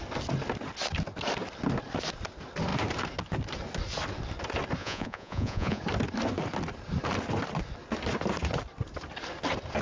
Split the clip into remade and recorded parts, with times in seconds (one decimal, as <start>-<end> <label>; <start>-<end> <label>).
0.0-4.8 recorded; 4.8-5.8 remade; 5.8-9.8 recorded